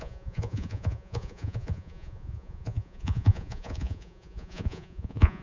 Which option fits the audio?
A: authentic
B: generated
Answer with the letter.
B